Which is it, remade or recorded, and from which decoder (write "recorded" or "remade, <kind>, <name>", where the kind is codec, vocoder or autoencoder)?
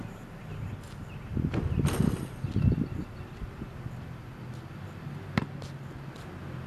recorded